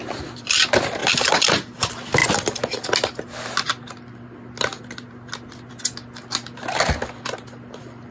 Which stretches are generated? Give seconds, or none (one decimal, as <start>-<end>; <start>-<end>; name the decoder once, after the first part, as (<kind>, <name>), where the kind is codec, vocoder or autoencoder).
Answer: 1.0-1.8 (vocoder, BigVGAN v2)